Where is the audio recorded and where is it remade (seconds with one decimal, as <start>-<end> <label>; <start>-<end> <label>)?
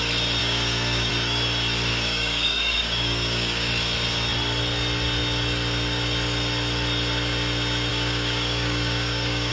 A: 0.0-0.4 recorded; 0.4-1.1 remade; 1.1-1.9 recorded; 1.9-3.7 remade; 3.7-7.9 recorded; 7.9-9.5 remade